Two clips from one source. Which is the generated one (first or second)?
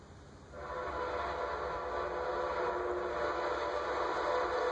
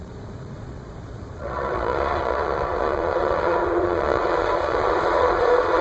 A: second